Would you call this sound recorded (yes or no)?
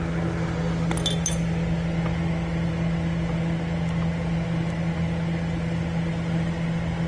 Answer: yes